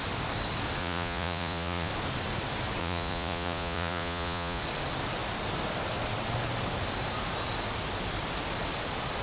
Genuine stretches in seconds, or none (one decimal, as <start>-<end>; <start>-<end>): 0.0-0.8; 1.9-2.8; 4.6-9.2